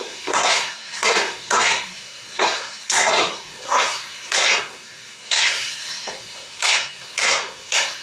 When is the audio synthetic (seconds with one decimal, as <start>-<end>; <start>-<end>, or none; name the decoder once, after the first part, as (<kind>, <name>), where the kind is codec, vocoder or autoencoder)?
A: 0.0-8.0 (codec, SNAC)